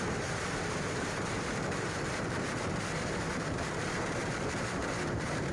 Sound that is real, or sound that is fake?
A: fake